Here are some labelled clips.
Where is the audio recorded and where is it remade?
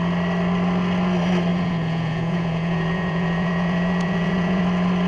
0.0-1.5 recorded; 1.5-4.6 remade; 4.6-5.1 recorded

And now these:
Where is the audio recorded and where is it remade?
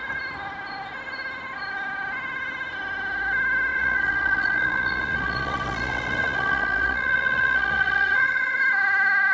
0.0-3.7 recorded; 3.7-8.6 remade; 8.6-9.3 recorded